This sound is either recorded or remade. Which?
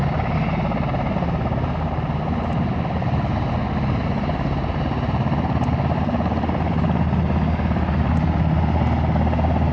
recorded